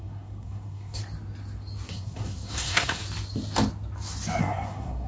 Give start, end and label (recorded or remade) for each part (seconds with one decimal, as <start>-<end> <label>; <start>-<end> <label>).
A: 0.0-1.0 remade; 1.0-1.9 recorded; 1.9-3.0 remade; 3.0-4.4 recorded; 4.4-5.1 remade